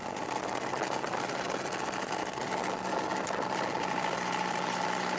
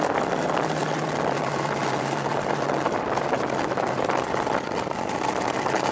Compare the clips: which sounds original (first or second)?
first